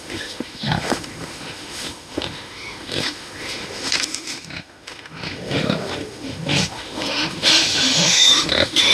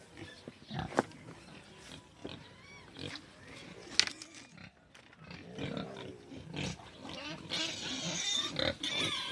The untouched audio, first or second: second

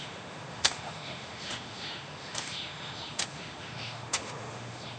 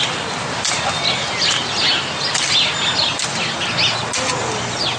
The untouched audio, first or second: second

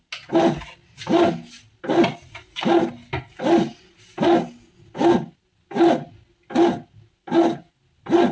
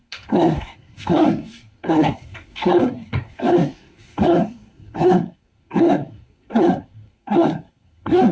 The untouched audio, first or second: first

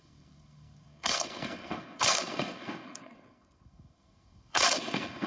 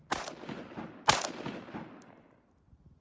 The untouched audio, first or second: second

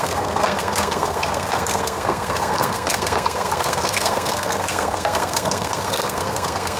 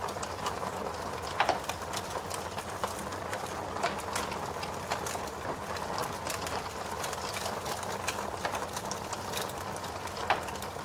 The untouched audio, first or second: second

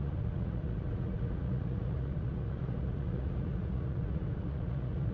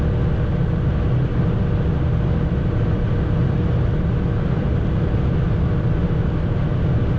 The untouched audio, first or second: second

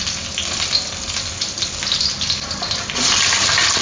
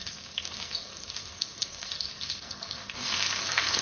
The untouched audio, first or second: first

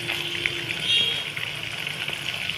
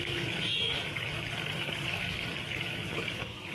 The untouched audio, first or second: first